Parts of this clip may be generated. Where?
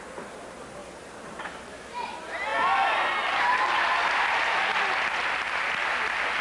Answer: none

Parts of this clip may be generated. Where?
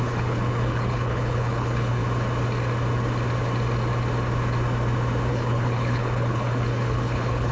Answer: 0.0-2.0; 5.3-7.5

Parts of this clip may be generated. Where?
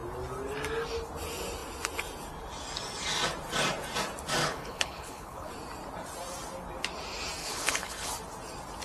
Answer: 4.4-5.5; 7.4-8.1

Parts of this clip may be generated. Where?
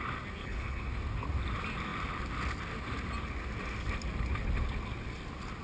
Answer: 0.4-0.9